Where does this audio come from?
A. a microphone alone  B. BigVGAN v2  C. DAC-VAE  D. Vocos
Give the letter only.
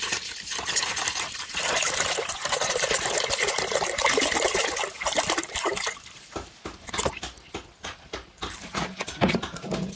A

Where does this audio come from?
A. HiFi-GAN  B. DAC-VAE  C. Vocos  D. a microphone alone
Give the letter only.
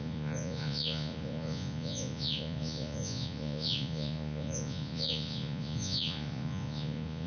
C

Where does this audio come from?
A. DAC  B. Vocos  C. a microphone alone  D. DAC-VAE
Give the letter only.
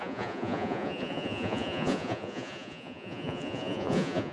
B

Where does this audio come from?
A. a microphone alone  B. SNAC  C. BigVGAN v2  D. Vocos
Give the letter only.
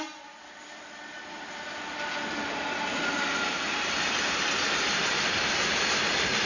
A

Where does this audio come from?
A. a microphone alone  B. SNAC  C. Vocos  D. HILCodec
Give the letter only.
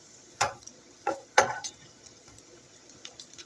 C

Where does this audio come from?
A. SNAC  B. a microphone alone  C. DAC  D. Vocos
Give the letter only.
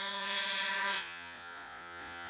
D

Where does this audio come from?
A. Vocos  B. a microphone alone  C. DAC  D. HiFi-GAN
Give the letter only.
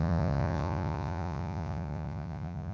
A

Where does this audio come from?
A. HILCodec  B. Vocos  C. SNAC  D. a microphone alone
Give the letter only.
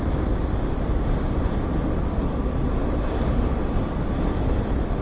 D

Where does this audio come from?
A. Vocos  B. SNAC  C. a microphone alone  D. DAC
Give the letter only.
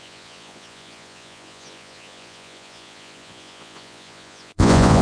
A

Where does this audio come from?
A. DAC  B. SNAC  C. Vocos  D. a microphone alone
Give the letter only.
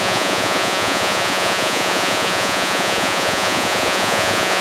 C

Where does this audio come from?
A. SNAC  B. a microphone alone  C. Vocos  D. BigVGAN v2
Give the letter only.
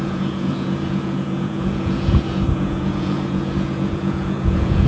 C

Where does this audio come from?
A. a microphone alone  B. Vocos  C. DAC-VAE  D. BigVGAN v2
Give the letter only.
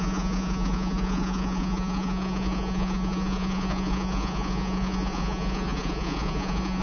B